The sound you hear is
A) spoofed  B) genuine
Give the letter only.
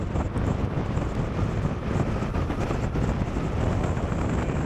B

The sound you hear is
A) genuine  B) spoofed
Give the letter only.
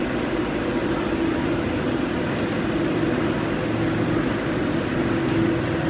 A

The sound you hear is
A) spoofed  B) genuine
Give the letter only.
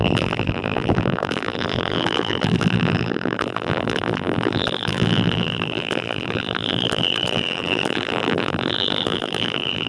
A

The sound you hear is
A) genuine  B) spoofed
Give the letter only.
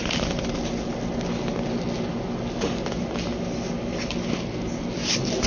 A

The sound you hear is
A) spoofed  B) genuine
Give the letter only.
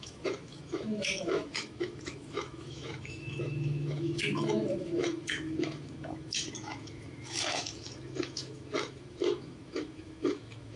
A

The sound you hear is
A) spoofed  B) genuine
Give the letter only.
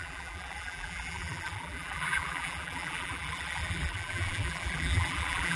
A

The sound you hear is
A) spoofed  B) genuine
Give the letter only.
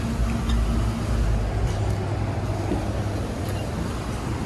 B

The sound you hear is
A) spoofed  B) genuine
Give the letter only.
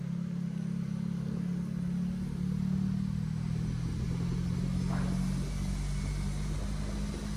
B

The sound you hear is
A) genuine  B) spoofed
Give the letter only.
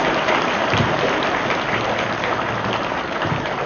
A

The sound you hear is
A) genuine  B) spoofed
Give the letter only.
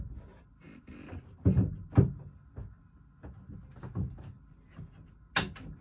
A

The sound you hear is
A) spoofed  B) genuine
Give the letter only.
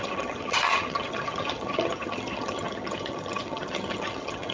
A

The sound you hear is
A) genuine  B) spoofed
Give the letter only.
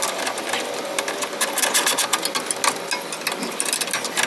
A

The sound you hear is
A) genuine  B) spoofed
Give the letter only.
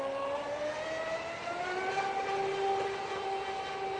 A